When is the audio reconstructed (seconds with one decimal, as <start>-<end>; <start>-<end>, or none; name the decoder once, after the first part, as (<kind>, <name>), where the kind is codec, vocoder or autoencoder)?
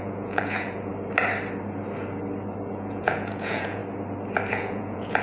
0.0-0.9 (vocoder, Vocos); 2.7-3.8; 4.5-5.2